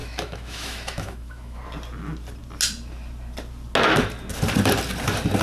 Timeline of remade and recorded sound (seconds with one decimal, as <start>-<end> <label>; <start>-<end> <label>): 0.0-1.6 remade; 1.6-5.4 recorded